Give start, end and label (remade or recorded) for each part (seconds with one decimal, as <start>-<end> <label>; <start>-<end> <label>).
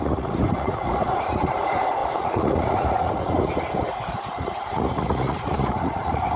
0.0-6.4 remade